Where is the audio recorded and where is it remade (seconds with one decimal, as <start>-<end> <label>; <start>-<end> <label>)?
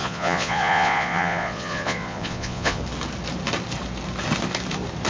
0.0-2.8 remade; 2.8-5.1 recorded